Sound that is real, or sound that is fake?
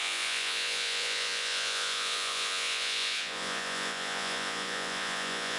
fake